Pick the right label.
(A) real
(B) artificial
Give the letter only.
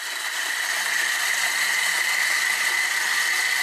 A